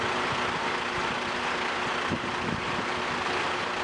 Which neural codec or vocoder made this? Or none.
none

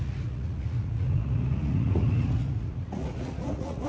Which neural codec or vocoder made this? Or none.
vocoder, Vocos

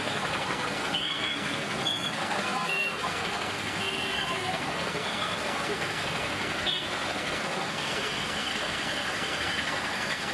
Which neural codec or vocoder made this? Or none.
codec, SNAC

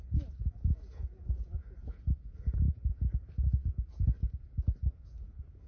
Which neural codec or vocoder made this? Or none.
vocoder, Vocos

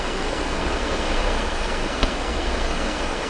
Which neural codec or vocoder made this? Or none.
codec, SNAC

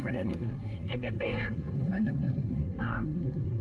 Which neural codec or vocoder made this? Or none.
codec, SNAC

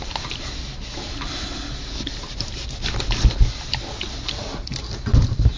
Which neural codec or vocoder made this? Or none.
none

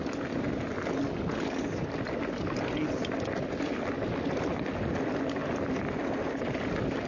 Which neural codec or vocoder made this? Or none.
none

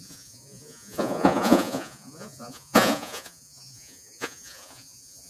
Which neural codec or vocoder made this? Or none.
vocoder, Vocos